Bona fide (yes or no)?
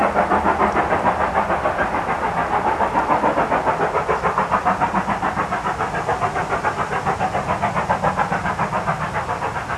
yes